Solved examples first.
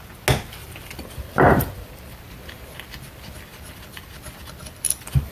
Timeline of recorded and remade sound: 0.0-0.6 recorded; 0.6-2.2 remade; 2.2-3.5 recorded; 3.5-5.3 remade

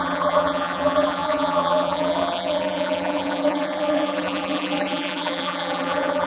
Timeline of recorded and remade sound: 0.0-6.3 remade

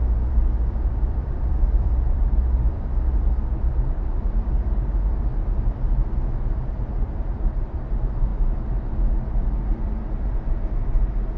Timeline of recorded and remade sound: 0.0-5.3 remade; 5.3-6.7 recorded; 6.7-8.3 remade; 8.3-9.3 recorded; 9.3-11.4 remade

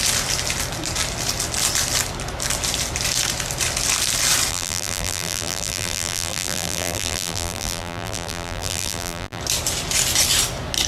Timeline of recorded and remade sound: 0.0-4.5 recorded; 4.5-9.4 remade; 9.4-10.9 recorded